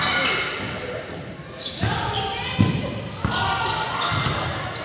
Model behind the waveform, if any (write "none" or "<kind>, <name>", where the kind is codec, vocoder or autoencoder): none